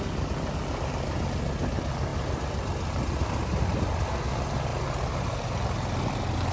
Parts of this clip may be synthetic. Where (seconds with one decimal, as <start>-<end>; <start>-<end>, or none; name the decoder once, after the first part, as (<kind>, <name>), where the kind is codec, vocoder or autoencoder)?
none